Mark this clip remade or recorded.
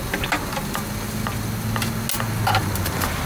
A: recorded